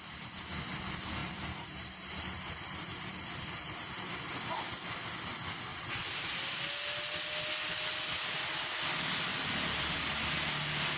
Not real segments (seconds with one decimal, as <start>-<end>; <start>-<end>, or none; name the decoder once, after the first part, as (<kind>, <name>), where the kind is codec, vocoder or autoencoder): 1.2-2.5 (vocoder, BigVGAN v2); 5.7-6.4; 9.3-10.1